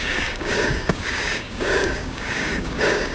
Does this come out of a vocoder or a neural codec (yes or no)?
yes